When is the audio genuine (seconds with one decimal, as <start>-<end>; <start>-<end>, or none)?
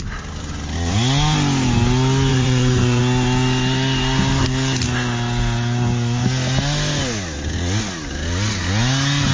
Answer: 0.0-2.3; 3.0-9.3